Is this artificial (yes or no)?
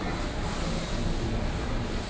no